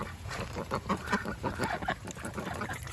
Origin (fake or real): fake